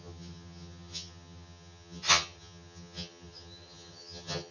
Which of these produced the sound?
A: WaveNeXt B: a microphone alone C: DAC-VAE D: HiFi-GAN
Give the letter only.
D